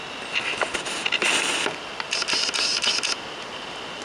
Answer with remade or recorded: recorded